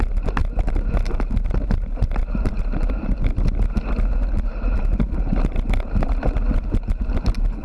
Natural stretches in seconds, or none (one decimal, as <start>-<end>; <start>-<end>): 0.0-7.6